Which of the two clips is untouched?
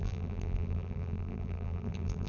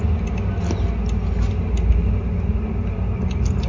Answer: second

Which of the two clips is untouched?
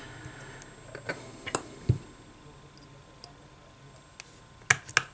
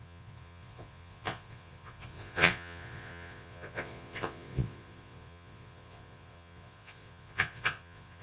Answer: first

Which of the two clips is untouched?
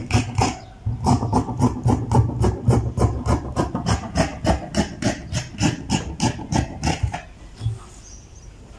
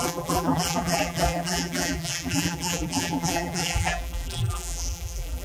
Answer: first